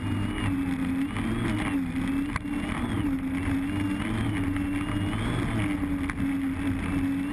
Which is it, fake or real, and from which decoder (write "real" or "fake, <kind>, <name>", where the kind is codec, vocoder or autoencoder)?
real